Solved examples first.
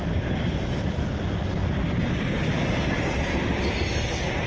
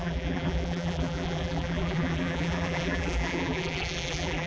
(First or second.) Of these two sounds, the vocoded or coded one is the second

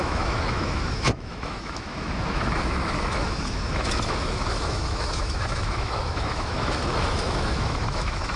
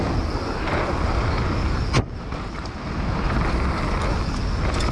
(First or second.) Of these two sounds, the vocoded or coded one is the first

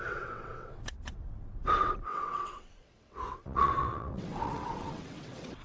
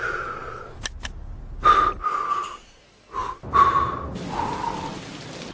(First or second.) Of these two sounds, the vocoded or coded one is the first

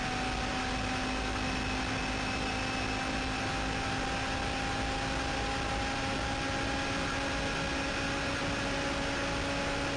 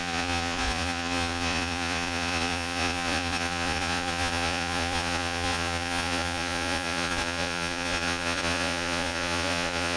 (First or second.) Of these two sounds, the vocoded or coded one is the second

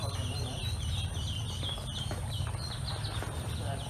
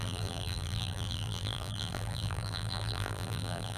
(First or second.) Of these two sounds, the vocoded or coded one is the second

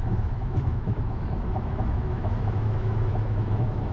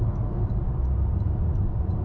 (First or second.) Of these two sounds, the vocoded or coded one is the first